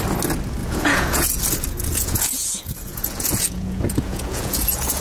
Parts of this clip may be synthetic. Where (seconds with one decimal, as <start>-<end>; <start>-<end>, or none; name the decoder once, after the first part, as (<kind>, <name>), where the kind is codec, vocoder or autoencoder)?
0.6-1.4 (vocoder, Vocos); 1.9-5.0